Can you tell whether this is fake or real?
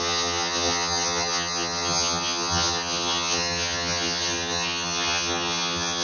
fake